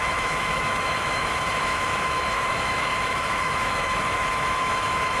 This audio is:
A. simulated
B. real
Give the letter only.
A